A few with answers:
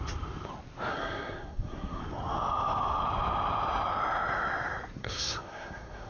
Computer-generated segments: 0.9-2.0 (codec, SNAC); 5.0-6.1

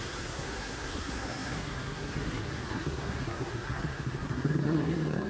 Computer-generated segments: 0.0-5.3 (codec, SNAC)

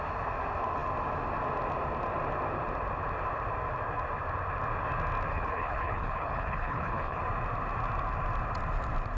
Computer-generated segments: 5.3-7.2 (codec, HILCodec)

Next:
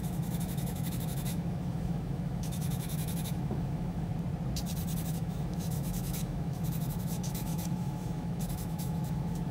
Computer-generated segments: 0.0-4.1 (autoencoder, DAC-VAE); 5.0-9.5

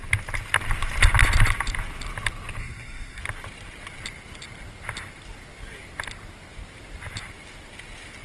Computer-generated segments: 2.6-3.2 (codec, SNAC)

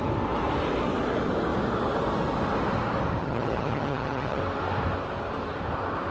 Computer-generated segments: 3.2-4.4 (vocoder, HiFi-GAN)

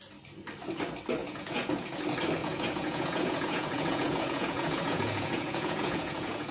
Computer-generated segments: 1.2-2.0 (vocoder, Vocos); 2.4-6.5